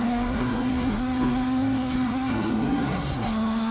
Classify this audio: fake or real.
fake